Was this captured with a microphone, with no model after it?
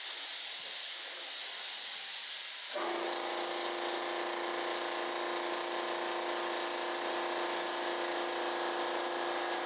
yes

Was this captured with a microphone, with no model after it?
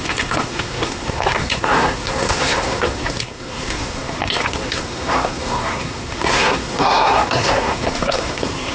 no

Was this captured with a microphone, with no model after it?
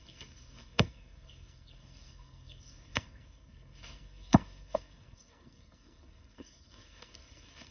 no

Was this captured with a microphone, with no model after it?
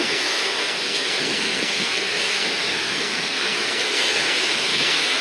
no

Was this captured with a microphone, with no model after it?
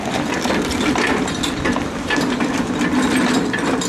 yes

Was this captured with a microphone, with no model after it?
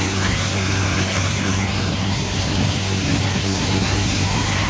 no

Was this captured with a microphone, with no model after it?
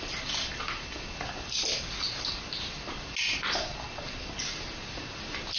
yes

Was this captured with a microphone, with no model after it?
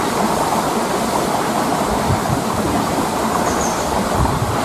no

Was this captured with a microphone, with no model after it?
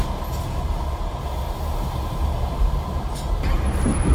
yes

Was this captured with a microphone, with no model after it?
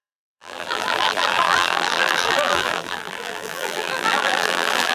no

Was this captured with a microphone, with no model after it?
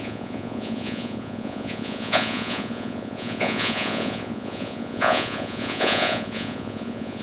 no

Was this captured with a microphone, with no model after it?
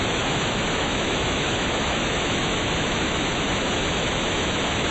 no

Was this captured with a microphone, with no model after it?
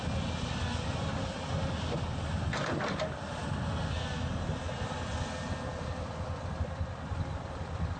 yes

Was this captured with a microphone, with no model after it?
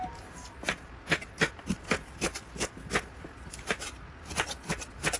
yes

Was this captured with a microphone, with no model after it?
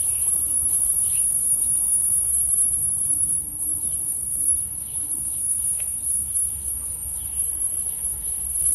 no